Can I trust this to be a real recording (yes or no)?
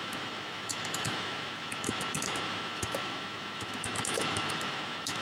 no